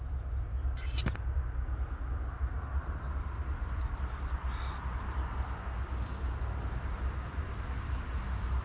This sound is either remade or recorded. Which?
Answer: recorded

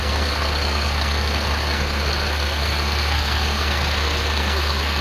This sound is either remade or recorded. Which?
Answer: remade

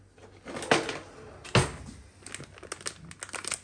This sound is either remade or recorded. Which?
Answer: recorded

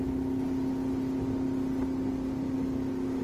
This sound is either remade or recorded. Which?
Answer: recorded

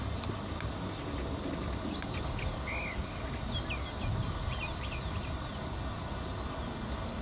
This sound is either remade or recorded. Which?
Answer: recorded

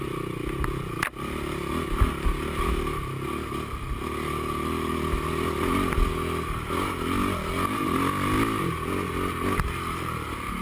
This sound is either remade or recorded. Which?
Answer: recorded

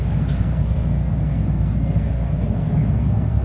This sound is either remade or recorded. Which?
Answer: remade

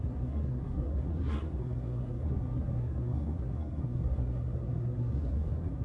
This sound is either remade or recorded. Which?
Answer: remade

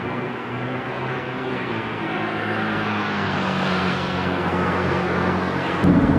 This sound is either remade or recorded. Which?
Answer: remade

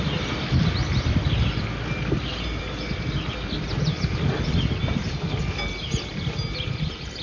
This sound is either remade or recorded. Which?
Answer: recorded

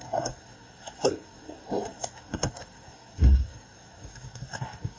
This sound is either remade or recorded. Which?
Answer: remade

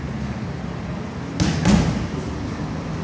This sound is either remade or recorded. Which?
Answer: recorded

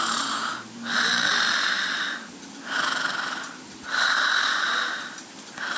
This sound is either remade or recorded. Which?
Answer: recorded